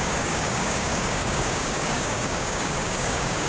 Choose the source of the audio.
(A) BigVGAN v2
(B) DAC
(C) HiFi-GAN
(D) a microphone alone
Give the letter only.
B